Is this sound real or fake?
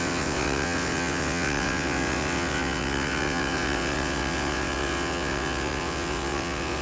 fake